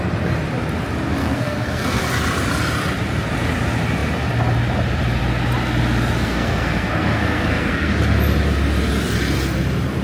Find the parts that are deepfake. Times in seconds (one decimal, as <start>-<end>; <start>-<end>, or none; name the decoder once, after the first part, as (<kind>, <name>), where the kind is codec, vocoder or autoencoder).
1.2-2.0 (codec, SNAC); 6.2-7.9

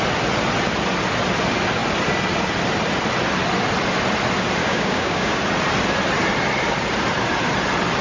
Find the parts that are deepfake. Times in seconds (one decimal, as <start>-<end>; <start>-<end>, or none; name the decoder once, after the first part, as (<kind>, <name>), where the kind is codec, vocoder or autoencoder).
4.6-5.4 (codec, DAC)

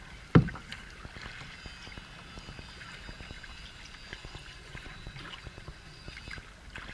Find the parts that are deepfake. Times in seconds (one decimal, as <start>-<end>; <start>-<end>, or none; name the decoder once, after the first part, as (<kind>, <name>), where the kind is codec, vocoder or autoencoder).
4.1-6.1 (vocoder, Vocos)

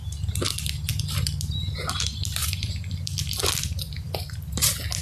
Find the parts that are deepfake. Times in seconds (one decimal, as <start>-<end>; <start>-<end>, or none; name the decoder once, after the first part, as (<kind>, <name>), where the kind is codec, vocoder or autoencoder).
2.4-4.5 (vocoder, BigVGAN v2)

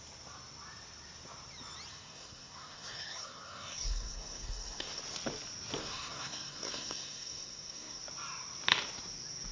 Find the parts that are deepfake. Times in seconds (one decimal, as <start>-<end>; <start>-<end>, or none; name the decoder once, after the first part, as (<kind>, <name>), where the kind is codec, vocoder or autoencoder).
1.9-5.0 (codec, SNAC); 5.8-8.0

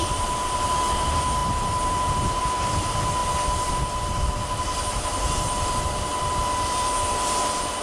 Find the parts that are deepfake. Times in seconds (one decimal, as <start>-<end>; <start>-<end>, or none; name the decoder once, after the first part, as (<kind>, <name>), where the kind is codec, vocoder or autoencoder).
none

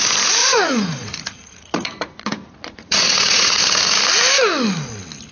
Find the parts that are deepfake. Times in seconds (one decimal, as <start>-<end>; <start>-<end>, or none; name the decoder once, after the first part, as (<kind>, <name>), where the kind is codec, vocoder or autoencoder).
0.4-3.6 (vocoder, Vocos)